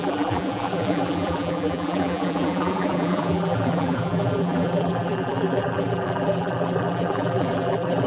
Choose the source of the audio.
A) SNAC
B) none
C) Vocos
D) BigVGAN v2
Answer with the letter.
D